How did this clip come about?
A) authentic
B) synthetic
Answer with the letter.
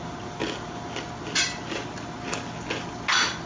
A